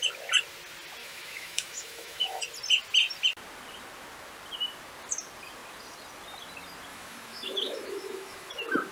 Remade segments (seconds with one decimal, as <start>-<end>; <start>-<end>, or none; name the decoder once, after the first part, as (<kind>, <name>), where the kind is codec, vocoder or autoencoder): 1.0-2.4 (autoencoder, DAC-VAE); 6.9-8.5